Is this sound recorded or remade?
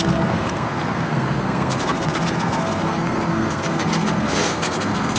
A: remade